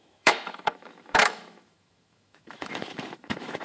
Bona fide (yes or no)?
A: no